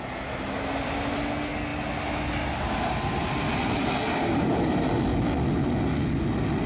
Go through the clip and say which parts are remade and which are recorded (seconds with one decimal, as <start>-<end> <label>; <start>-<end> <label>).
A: 0.0-6.7 recorded